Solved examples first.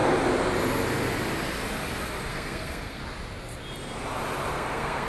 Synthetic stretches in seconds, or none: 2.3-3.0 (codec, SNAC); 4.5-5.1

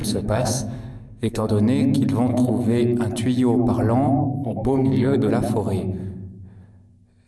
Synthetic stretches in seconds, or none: 0.0-1.5 (codec, SNAC); 2.3-2.8; 4.2-5.3

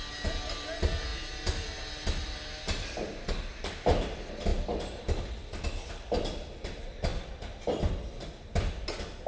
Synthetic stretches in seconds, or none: none

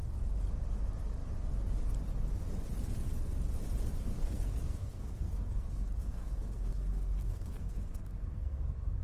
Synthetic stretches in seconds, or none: 4.1-9.0 (codec, SNAC)

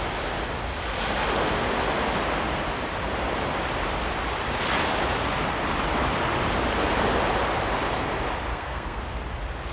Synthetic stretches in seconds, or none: 8.5-9.0 (codec, SNAC)

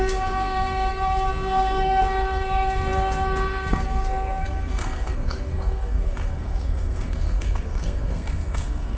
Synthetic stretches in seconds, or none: 0.0-9.0 (codec, SNAC)

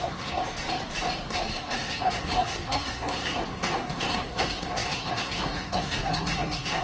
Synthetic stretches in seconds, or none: 0.0-0.4 (codec, SNAC); 1.3-6.8